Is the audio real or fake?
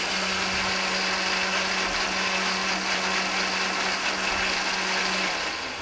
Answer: real